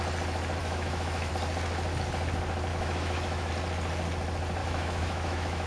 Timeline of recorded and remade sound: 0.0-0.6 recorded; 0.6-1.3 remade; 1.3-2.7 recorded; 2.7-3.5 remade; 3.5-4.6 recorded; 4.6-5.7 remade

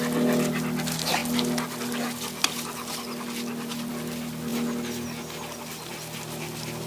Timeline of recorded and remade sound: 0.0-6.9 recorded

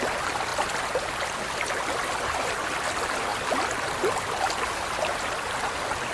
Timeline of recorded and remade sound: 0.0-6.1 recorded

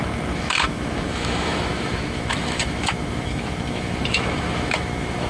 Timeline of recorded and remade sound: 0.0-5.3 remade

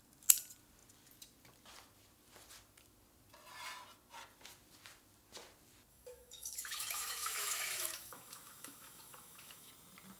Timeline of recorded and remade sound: 0.0-5.9 recorded; 5.9-9.7 remade; 9.7-10.2 recorded

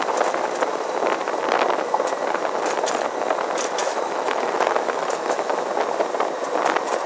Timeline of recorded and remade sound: 0.0-3.8 recorded; 3.8-5.7 remade; 5.7-7.1 recorded

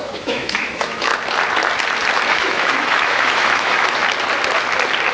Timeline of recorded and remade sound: 0.0-1.1 remade; 1.1-2.3 recorded; 2.3-4.0 remade; 4.0-5.1 recorded

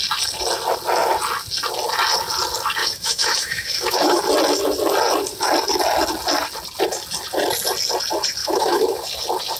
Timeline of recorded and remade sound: 0.0-2.8 recorded; 2.8-4.2 remade; 4.2-8.4 recorded; 8.4-9.0 remade; 9.0-9.6 recorded